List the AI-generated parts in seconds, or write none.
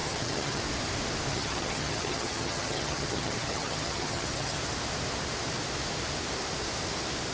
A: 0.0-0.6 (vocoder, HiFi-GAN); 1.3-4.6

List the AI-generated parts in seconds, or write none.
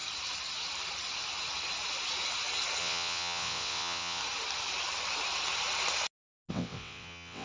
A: 2.8-4.2 (vocoder, WaveNeXt); 6.5-7.4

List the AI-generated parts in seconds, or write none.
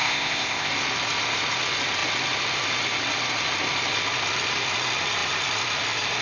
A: 0.0-0.7 (codec, ZipCodec)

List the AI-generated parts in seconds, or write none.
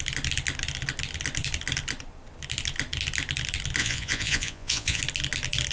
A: 3.8-5.0 (vocoder, Vocos)